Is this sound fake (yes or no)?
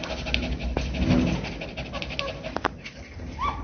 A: no